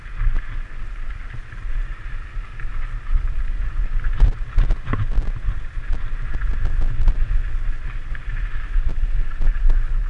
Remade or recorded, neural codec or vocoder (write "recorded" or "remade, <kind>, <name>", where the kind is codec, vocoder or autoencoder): recorded